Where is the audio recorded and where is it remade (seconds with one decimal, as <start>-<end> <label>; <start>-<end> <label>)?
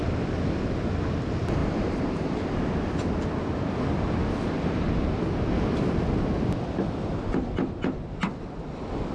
0.0-1.6 recorded; 1.6-2.6 remade; 2.6-9.1 recorded